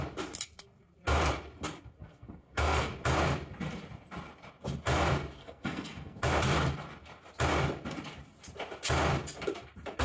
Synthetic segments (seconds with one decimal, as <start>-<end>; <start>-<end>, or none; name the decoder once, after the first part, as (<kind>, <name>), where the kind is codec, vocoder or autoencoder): 2.0-2.9 (codec, SNAC); 5.4-6.2